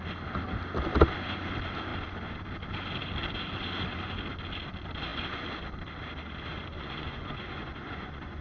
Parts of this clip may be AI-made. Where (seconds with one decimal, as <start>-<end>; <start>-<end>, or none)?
6.5-8.4